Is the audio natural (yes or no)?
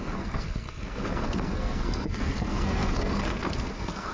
no